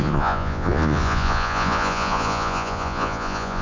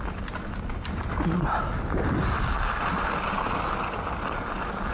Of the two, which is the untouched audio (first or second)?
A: second